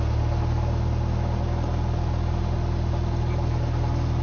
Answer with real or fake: real